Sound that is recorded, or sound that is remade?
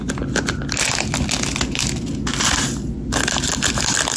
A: recorded